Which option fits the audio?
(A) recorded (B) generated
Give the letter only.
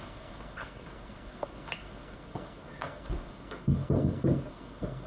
B